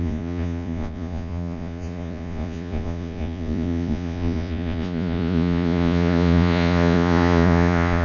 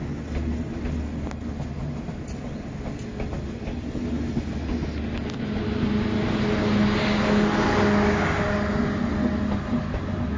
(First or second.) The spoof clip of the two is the first